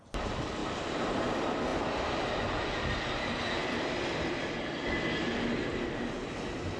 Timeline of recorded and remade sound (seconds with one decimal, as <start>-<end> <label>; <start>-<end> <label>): 0.0-0.6 recorded; 0.6-1.2 remade; 1.2-3.6 recorded; 3.6-4.4 remade; 4.4-6.8 recorded